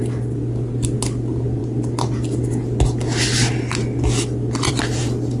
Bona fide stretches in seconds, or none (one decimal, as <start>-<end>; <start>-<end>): 0.0-5.4